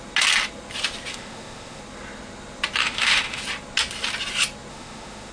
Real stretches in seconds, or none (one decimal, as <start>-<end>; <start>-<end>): 0.0-1.1; 1.8-2.8; 3.4-4.7